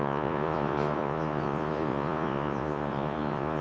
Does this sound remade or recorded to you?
remade